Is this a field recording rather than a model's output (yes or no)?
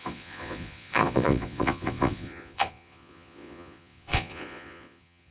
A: no